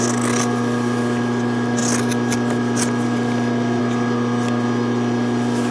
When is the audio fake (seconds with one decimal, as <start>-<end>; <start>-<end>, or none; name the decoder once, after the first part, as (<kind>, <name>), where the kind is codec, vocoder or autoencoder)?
none